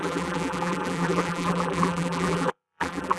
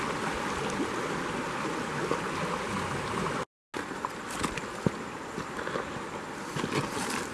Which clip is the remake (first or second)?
first